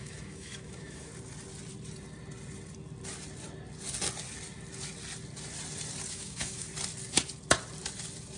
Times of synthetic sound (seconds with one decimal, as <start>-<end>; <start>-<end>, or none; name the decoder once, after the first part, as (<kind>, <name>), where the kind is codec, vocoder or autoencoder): 0.0-1.1 (autoencoder, DAC-VAE); 6.1-6.7

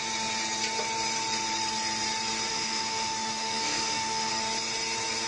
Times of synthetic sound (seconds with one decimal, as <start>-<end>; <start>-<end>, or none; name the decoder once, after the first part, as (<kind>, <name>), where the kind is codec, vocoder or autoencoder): 2.5-4.3 (autoencoder, DAC-VAE)

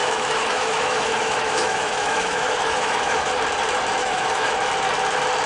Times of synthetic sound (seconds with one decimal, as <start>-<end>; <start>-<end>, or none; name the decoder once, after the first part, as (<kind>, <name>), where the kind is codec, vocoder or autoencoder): 0.0-3.3 (autoencoder, DAC-VAE); 4.0-4.5

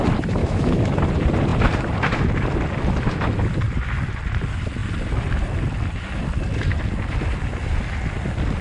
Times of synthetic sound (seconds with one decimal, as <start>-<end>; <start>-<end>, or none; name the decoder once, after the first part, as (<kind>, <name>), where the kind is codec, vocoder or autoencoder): 0.4-1.0 (autoencoder, DAC-VAE)

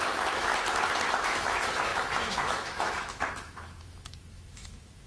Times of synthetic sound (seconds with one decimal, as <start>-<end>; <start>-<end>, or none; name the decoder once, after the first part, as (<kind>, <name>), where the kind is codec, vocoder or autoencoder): 0.0-0.5 (autoencoder, DAC-VAE); 1.1-5.1